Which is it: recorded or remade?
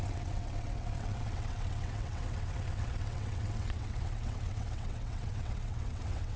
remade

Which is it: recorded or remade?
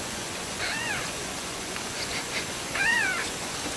remade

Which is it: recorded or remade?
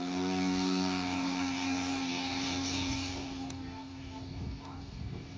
remade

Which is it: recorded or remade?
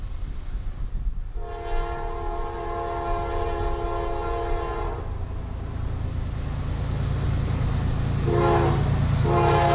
recorded